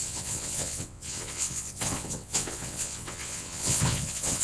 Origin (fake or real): fake